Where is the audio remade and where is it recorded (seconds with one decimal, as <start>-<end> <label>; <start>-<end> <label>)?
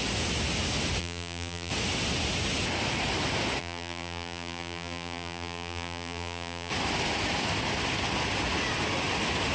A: 0.0-1.0 recorded; 1.0-1.7 remade; 1.7-3.6 recorded; 3.6-6.7 remade; 6.7-9.5 recorded